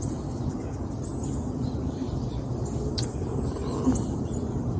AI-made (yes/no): no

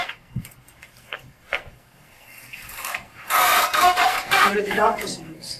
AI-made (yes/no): yes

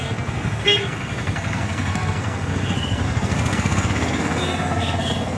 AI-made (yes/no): yes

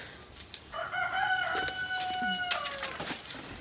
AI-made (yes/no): no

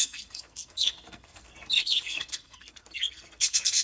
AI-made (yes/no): yes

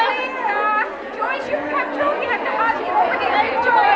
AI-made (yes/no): no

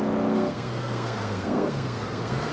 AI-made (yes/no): yes